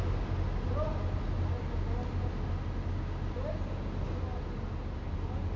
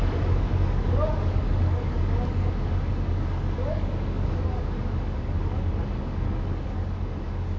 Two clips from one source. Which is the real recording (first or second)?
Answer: first